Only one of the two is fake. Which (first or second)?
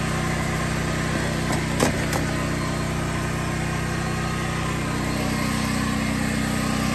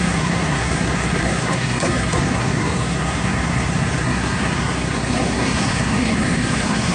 second